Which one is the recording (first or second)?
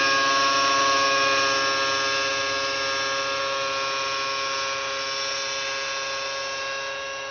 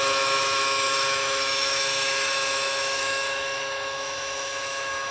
first